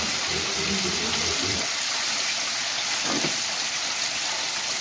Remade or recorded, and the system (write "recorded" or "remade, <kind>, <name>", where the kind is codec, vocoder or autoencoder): remade, vocoder, BigVGAN v2